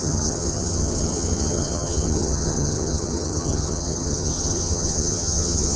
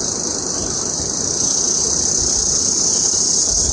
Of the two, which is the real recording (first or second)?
second